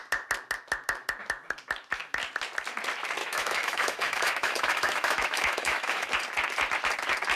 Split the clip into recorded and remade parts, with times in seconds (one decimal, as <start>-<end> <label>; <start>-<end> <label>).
0.0-3.2 recorded; 3.2-6.1 remade; 6.1-7.4 recorded